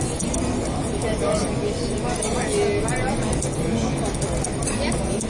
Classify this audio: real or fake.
real